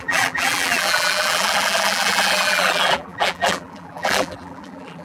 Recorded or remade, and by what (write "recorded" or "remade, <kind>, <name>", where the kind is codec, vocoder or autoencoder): remade, vocoder, BigVGAN v2